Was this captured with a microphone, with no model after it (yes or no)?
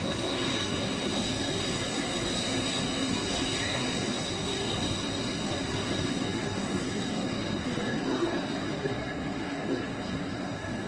no